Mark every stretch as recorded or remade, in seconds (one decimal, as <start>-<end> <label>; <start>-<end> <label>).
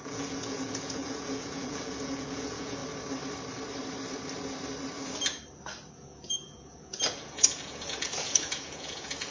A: 0.0-2.8 remade; 2.8-5.9 recorded; 5.9-9.3 remade